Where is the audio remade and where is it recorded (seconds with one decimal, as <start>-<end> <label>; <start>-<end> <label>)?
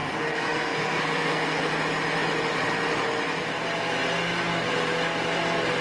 0.0-1.7 remade; 1.7-5.8 recorded